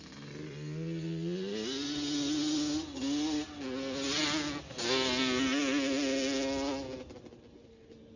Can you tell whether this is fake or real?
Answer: real